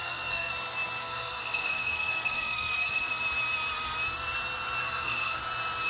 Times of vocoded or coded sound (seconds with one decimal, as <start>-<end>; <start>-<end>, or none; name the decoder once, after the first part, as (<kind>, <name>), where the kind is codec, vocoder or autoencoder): 0.0-0.5 (codec, SNAC); 1.0-3.1; 4.8-5.4